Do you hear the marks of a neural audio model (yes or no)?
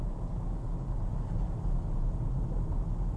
no